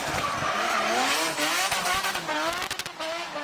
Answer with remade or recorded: recorded